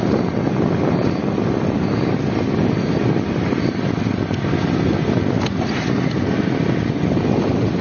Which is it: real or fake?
real